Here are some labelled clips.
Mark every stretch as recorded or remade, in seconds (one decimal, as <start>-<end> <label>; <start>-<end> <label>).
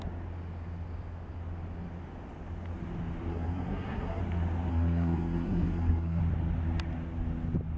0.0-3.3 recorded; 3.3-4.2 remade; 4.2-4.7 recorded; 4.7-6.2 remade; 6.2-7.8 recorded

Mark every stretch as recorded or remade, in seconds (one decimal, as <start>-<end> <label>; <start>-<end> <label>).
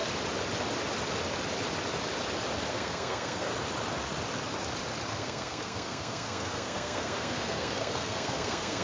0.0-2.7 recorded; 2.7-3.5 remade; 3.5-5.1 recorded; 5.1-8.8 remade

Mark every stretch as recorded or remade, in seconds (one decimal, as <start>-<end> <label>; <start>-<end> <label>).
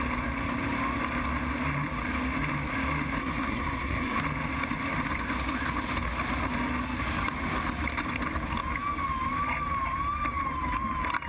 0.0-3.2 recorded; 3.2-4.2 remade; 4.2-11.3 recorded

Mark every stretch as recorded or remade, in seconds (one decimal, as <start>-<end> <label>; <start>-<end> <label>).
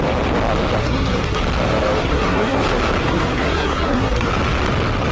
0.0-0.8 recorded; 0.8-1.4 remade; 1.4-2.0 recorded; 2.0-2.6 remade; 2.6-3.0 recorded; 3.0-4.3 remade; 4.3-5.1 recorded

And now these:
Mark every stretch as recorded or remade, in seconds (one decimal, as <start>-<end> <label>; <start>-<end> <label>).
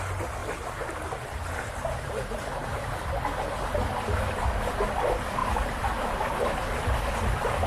0.0-7.7 recorded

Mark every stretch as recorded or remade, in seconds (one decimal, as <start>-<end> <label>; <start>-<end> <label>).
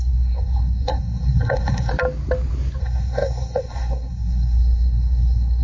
0.0-1.9 remade; 1.9-2.8 recorded; 2.8-5.6 remade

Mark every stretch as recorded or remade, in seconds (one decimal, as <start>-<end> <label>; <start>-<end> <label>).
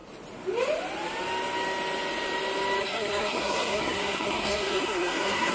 0.0-2.8 recorded; 2.8-5.5 remade